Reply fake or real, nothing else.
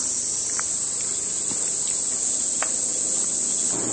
real